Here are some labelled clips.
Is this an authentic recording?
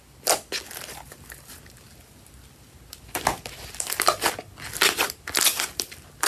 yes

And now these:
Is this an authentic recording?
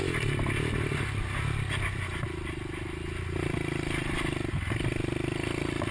yes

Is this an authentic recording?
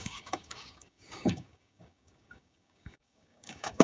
no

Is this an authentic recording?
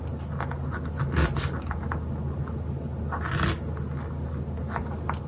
yes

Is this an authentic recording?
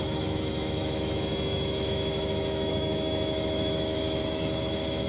no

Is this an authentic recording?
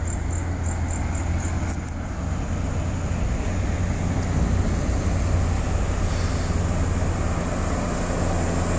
yes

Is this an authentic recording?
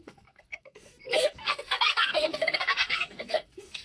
no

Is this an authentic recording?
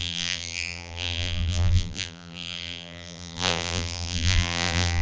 no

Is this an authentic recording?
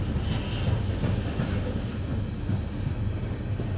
yes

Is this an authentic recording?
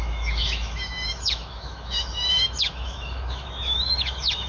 no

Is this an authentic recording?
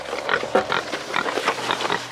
yes